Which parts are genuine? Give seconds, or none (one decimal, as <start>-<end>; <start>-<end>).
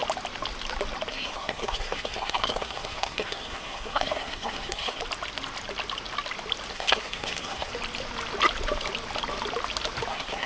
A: 0.0-1.1; 5.0-6.7; 7.7-10.1